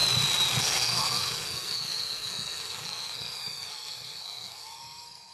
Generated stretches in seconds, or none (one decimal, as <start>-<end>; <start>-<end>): 0.6-5.3